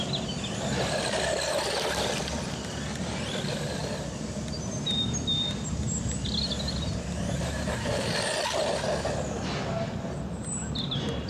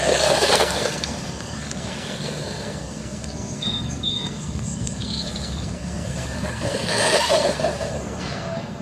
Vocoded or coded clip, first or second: second